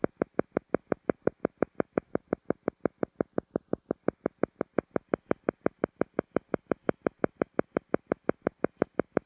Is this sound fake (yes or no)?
no